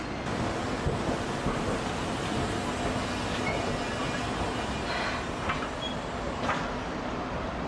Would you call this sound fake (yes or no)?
no